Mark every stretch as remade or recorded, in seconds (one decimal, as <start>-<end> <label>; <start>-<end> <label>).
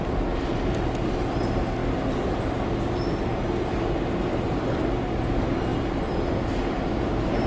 0.0-7.5 recorded